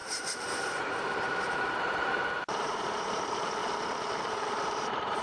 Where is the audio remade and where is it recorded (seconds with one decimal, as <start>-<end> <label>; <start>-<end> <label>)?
0.0-3.6 remade; 3.6-4.3 recorded; 4.3-5.2 remade